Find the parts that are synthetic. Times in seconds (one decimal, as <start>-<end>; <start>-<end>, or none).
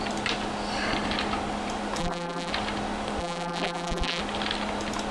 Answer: 2.0-2.5; 3.2-4.2